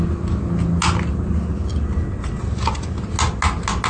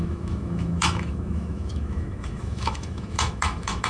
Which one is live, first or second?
first